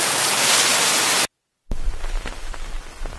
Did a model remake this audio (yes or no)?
no